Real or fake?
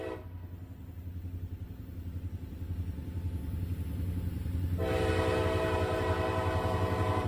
real